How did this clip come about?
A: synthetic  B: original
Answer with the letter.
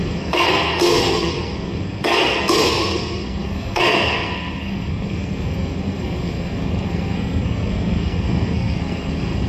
A